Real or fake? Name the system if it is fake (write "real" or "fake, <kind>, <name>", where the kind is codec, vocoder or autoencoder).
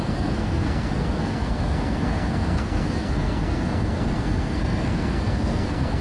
fake, codec, SNAC